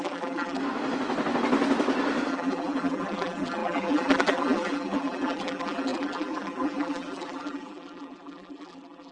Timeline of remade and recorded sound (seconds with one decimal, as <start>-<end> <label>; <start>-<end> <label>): 0.0-0.6 remade; 0.6-2.3 recorded; 2.3-9.1 remade